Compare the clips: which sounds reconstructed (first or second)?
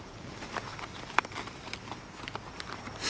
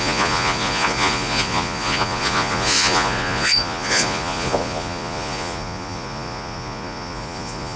second